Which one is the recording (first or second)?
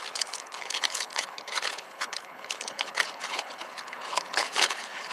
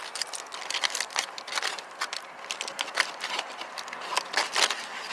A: second